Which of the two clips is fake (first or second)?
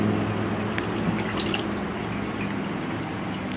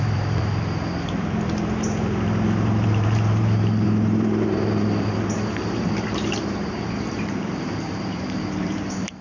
second